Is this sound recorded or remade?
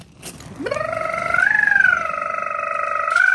recorded